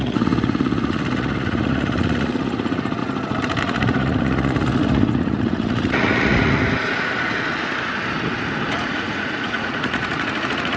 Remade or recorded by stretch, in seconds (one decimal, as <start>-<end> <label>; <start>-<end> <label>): 0.0-3.0 remade; 3.0-3.6 recorded; 3.6-6.6 remade; 6.6-8.7 recorded; 8.7-10.8 remade